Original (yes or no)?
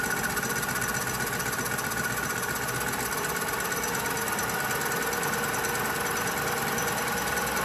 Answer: yes